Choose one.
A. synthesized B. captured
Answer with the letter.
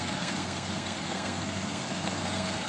A